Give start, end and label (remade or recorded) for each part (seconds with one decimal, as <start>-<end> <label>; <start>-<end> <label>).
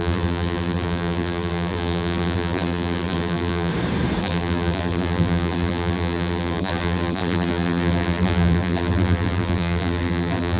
0.0-3.7 remade; 3.7-4.2 recorded; 4.2-10.6 remade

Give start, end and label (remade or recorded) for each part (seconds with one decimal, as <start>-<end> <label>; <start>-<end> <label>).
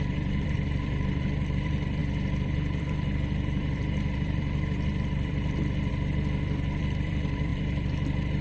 0.0-8.4 remade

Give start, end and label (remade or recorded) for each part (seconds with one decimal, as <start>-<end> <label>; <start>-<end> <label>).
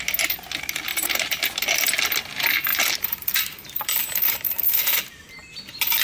0.0-0.9 recorded; 0.9-1.4 remade; 1.4-2.7 recorded; 2.7-5.6 remade; 5.6-6.0 recorded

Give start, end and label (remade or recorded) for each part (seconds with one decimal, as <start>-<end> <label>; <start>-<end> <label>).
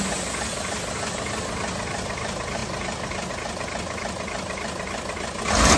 0.0-5.8 recorded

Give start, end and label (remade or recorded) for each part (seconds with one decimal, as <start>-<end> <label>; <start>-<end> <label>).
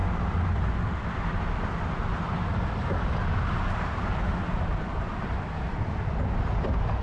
0.0-7.0 recorded